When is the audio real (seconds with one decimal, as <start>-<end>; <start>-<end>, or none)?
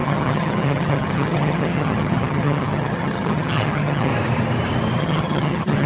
4.1-5.0